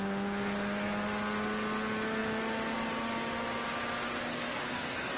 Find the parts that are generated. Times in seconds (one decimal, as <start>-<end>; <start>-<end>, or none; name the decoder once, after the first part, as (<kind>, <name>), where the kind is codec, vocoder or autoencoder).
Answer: 4.3-5.2 (codec, SNAC)